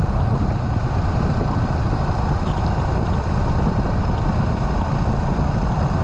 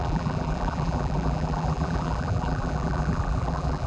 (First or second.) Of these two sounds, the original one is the first